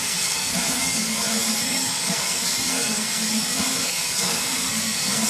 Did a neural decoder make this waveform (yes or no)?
yes